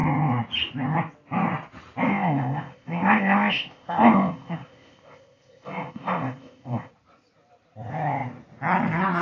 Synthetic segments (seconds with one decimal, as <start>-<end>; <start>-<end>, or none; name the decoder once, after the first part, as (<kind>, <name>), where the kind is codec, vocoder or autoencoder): 2.1-6.9 (codec, ZipCodec)